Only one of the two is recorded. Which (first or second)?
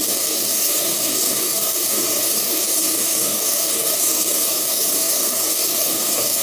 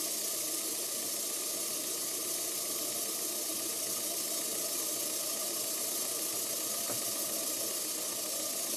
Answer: second